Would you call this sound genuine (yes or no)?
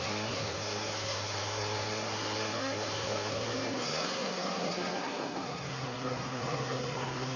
no